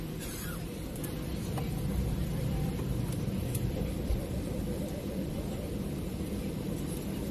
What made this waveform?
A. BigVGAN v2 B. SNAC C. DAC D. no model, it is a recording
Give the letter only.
A